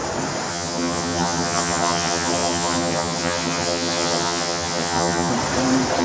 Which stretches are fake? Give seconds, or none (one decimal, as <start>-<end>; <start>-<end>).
0.5-5.3